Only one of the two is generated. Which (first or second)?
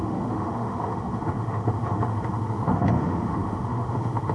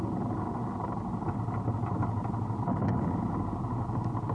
first